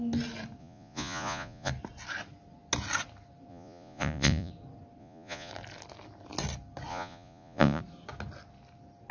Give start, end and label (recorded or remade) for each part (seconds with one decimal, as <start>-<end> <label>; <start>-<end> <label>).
0.0-0.6 recorded; 0.6-1.7 remade; 1.7-3.5 recorded; 3.5-4.5 remade; 4.5-5.0 recorded; 5.0-5.5 remade; 5.5-6.9 recorded; 6.9-7.8 remade; 7.8-9.1 recorded